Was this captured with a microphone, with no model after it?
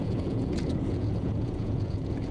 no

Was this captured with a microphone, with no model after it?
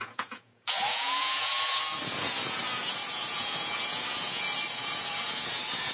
no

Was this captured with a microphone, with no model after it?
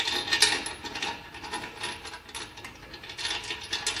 yes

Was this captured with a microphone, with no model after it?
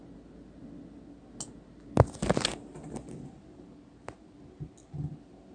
yes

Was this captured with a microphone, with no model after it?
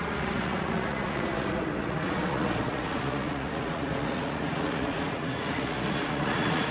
no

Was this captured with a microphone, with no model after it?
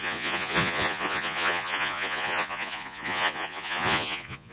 no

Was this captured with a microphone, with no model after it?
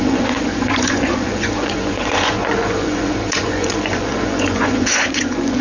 no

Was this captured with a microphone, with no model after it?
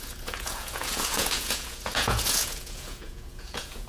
no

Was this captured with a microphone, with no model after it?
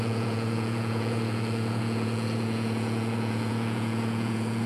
no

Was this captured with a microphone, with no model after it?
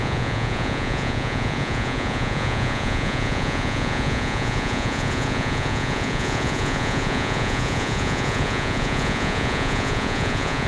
no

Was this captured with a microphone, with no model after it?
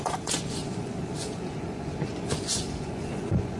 no